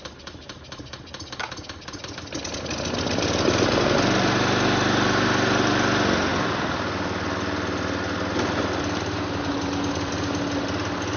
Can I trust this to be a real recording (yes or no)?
yes